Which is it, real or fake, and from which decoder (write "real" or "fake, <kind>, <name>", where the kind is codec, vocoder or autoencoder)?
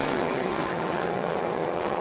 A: fake, vocoder, WaveNeXt